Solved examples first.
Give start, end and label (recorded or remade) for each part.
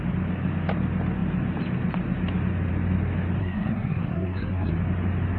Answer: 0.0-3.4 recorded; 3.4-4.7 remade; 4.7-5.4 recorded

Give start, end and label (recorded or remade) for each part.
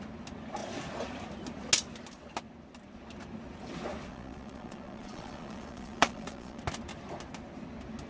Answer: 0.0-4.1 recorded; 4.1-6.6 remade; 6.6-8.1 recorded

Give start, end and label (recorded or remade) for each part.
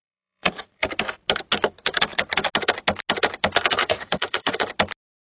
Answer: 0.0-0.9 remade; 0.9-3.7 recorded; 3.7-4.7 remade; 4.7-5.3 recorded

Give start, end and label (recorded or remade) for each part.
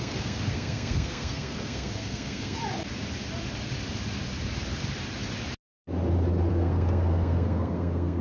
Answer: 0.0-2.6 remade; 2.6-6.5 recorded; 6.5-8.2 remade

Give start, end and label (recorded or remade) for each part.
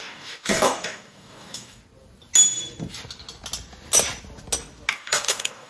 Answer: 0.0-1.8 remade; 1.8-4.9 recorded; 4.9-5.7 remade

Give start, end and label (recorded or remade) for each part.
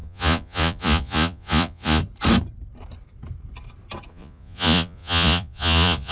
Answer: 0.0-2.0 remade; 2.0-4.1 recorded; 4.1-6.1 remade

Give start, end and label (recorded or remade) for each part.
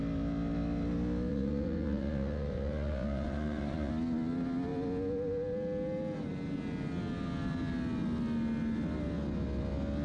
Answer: 0.0-1.3 recorded; 1.3-3.9 remade; 3.9-10.0 recorded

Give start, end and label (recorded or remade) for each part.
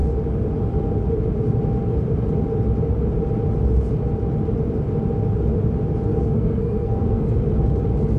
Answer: 0.0-6.1 recorded; 6.1-7.4 remade; 7.4-8.2 recorded